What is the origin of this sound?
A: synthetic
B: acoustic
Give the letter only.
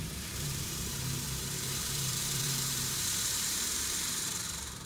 A